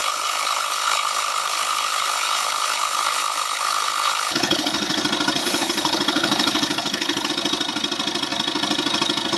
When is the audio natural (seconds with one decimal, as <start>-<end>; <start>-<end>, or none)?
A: 5.0-5.4; 7.3-9.4